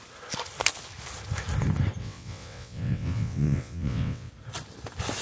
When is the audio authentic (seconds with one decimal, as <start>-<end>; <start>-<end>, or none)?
0.0-2.0; 4.3-5.2